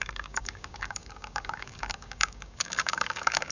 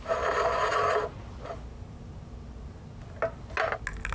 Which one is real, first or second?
second